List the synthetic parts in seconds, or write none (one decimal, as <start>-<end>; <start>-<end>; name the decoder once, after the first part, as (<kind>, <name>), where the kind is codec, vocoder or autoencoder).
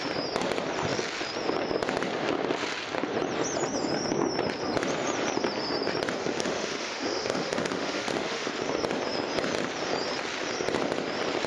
6.2-8.5 (autoencoder, DAC-VAE)